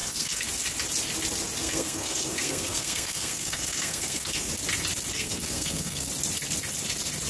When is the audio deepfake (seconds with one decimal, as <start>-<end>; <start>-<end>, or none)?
0.0-0.5; 1.6-4.5; 5.1-6.1